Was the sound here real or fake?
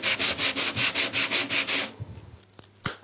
real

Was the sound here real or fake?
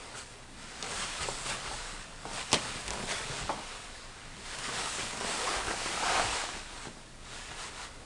fake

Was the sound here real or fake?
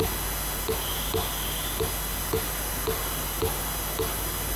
real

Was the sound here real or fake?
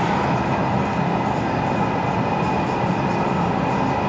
real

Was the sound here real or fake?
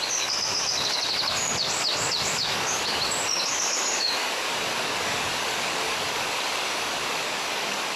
fake